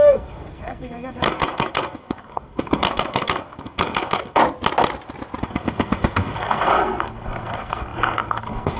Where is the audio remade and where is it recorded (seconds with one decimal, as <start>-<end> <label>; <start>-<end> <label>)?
0.0-4.4 remade; 4.4-5.4 recorded; 5.4-8.8 remade